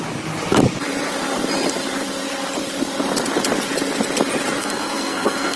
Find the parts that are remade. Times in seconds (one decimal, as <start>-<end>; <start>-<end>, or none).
4.6-5.6